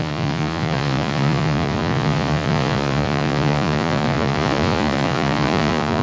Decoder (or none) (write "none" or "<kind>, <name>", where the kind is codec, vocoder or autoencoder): vocoder, Vocos